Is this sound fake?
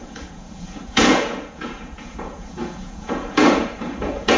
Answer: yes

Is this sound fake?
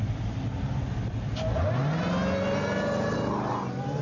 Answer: no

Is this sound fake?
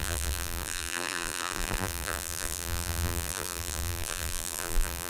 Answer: yes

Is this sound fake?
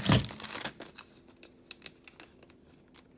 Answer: no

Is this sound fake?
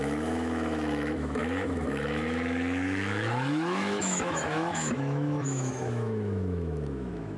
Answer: yes